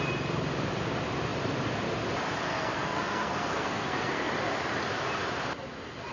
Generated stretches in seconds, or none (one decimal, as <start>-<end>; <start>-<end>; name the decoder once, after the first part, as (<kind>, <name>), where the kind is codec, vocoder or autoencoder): 2.5-4.3 (codec, SNAC)